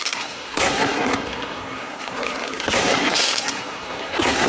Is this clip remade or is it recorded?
remade